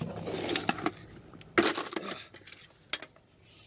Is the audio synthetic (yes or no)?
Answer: no